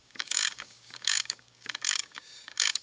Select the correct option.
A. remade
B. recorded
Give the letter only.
A